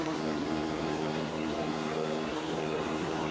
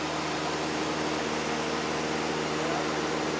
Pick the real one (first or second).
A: second